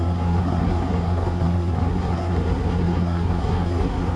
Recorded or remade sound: remade